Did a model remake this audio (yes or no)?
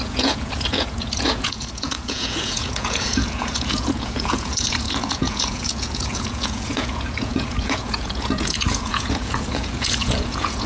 yes